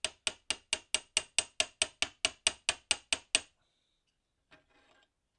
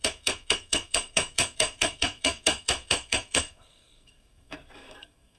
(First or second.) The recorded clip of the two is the first